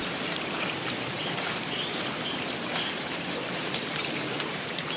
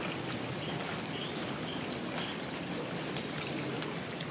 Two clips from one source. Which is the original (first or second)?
second